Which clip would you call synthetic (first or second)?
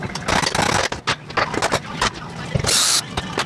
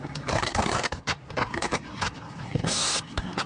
second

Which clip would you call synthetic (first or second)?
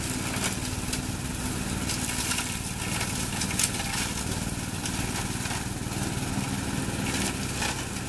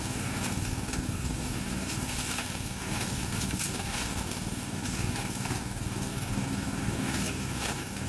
second